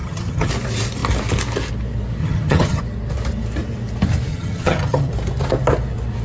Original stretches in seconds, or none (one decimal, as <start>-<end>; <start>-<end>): 0.5-2.2; 2.8-4.3; 5.1-6.2